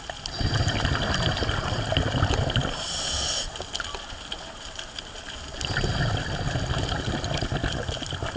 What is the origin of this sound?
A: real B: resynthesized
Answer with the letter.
A